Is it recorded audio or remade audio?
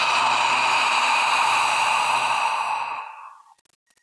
recorded